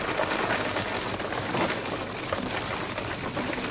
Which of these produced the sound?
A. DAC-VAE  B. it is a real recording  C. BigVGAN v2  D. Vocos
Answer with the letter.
B